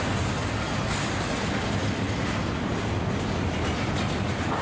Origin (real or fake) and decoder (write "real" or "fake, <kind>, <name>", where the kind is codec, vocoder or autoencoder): real